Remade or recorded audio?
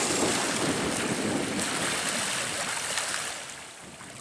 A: recorded